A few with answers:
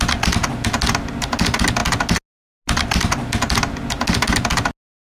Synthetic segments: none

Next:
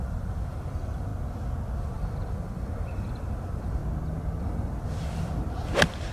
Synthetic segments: 0.0-1.1 (vocoder, BigVGAN v2); 1.8-3.8; 4.4-6.1

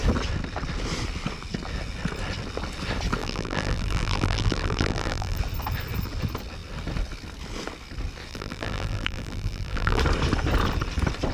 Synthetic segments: 3.2-5.4 (vocoder, BigVGAN v2); 8.3-10.0

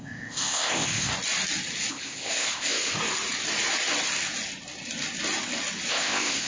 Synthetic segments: 0.0-1.1 (codec, ZipCodec); 1.9-2.9; 5.9-6.5

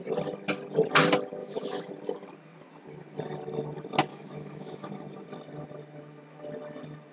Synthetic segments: 1.4-1.9 (autoencoder, DAC-VAE); 4.1-4.9

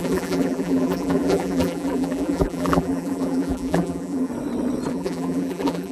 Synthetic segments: 0.0-4.3 (vocoder, BigVGAN v2); 4.9-5.9

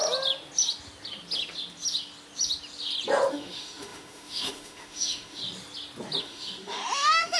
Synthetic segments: 3.3-5.4 (autoencoder, DAC-VAE); 6.2-7.4